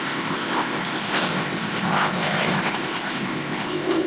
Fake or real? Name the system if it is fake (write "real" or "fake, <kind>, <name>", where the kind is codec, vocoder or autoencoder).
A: fake, codec, ZipCodec